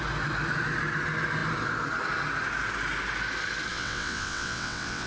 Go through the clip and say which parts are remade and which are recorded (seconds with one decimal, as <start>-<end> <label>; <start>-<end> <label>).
0.0-3.7 recorded; 3.7-5.1 remade